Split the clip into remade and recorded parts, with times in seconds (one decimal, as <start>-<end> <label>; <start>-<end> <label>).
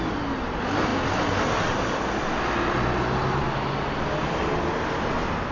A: 0.0-5.5 recorded